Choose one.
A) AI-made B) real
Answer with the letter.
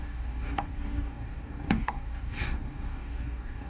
A